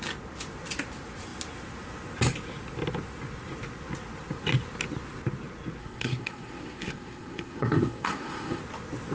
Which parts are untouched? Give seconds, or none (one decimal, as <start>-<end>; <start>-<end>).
0.0-5.8; 8.6-9.1